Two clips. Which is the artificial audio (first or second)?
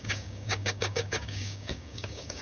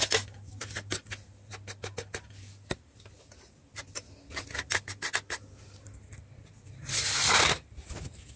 first